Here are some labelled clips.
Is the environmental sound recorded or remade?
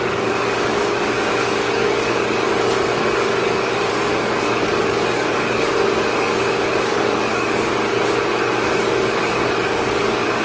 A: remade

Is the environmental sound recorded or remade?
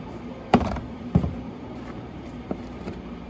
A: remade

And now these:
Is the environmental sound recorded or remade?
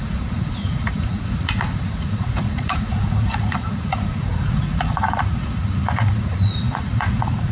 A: remade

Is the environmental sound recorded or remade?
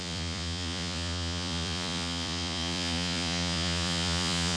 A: remade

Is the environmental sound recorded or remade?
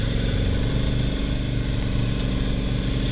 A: recorded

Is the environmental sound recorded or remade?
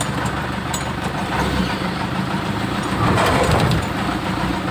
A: remade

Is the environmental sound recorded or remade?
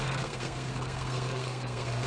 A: remade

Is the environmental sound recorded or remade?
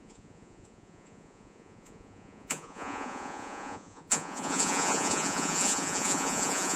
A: remade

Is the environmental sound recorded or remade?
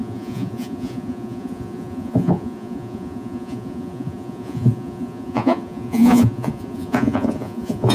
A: remade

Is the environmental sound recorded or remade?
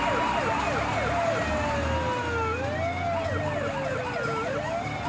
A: recorded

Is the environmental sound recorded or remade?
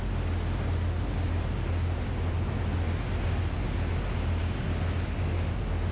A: recorded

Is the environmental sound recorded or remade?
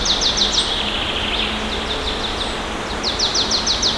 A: recorded